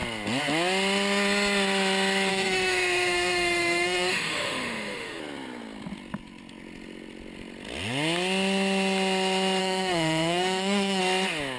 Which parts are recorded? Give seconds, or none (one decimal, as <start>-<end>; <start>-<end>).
0.0-2.3; 5.2-9.6; 11.0-11.6